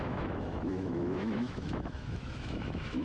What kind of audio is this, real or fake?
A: fake